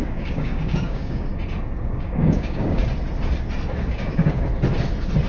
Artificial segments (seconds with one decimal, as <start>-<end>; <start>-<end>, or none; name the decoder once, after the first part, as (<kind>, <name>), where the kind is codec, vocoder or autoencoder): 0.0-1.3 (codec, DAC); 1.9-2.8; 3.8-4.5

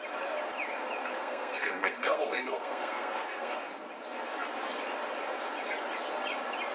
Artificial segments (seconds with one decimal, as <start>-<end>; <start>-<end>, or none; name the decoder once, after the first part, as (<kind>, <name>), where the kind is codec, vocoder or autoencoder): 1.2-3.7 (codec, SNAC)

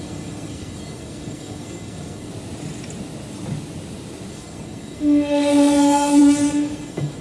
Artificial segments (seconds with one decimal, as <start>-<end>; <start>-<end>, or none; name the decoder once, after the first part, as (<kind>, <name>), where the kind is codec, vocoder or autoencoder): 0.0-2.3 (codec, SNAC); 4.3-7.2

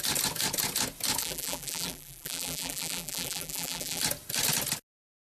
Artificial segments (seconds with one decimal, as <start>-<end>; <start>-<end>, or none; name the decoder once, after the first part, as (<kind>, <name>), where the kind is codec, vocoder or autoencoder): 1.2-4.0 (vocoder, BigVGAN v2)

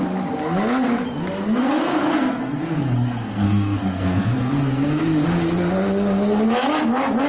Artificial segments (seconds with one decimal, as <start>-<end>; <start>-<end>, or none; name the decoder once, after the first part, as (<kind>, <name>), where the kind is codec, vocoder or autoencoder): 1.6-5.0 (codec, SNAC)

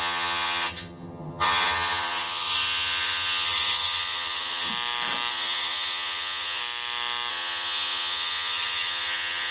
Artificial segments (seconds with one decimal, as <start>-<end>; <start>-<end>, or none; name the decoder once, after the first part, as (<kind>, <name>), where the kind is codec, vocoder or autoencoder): 0.0-4.7 (vocoder, HiFi-GAN); 5.3-6.6; 7.3-9.5

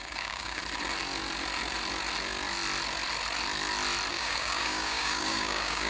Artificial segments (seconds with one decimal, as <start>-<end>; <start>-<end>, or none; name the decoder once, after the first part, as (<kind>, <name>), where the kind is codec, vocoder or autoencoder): 0.0-0.6 (codec, DAC); 4.1-5.9